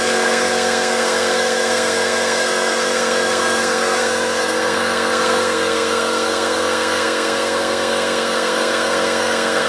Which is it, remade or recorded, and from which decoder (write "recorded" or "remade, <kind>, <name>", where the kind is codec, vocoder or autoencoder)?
remade, codec, SNAC